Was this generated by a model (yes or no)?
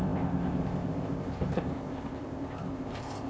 yes